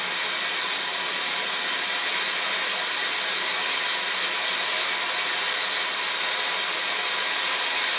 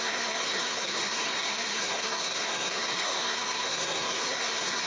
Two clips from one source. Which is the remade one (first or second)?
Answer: second